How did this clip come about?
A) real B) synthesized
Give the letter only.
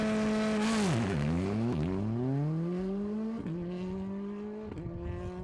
A